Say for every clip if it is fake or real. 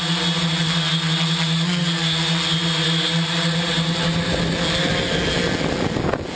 real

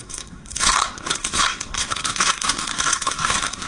fake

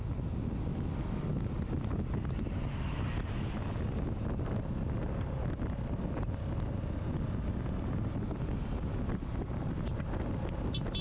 real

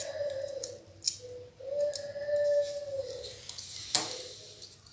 real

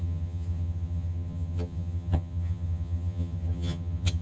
fake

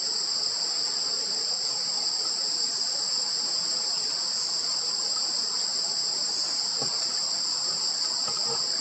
real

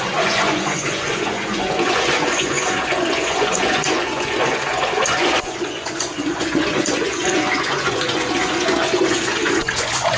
fake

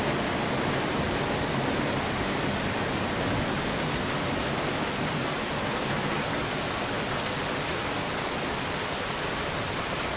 real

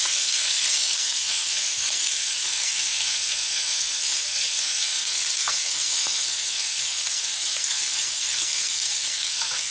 fake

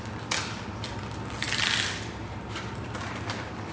real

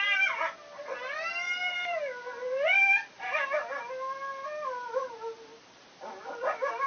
real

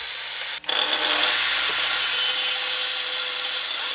real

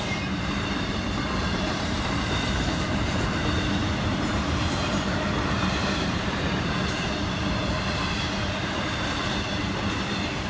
fake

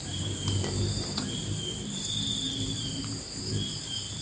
fake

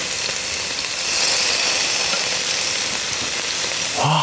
real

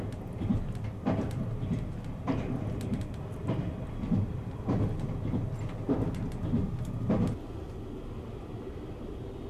real